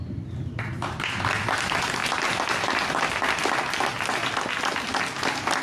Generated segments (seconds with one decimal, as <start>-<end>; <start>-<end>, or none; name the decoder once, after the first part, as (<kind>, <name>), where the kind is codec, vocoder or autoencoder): none